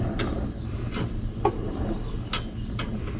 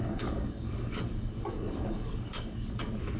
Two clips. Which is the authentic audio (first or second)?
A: first